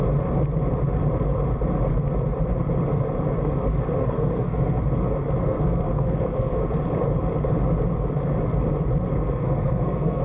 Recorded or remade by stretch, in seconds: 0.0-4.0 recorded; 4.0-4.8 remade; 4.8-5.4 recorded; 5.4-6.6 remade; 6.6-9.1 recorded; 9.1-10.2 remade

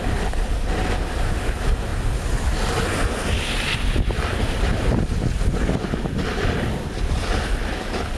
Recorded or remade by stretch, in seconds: 0.0-8.2 recorded

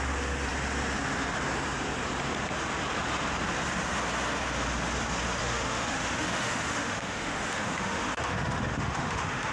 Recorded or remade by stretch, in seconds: 0.0-5.4 recorded; 5.4-9.5 remade

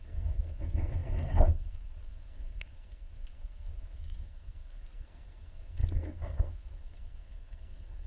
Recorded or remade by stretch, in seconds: 0.0-8.1 remade

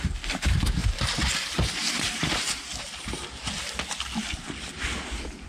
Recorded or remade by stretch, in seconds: 0.0-0.8 recorded; 0.8-3.6 remade; 3.6-5.5 recorded

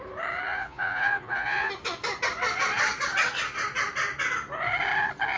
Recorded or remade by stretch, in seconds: 0.0-0.5 recorded; 0.5-1.7 remade; 1.7-5.4 recorded